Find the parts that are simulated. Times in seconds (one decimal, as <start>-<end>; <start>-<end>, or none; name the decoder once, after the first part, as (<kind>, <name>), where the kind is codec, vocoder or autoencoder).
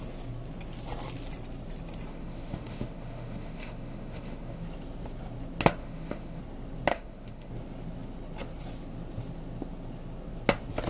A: 2.1-4.6 (autoencoder, DAC-VAE); 5.8-6.4; 6.9-7.5